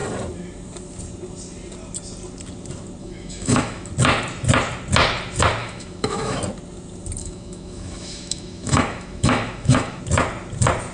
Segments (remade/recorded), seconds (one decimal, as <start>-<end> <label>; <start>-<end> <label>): 0.0-3.0 recorded; 3.0-3.9 remade; 3.9-5.6 recorded; 5.6-6.4 remade; 6.4-7.2 recorded; 7.2-10.0 remade; 10.0-10.9 recorded